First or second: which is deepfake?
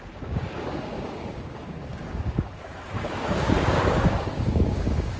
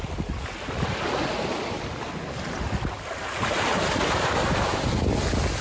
first